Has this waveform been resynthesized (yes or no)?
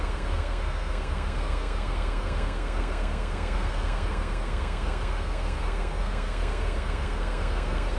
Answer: yes